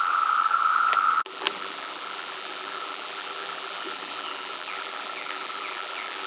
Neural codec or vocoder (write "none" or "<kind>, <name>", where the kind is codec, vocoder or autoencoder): vocoder, BigVGAN v2